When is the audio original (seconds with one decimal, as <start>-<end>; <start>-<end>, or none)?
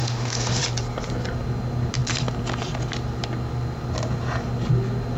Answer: 0.6-5.2